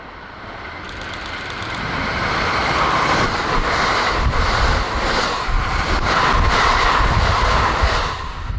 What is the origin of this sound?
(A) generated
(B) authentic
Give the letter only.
B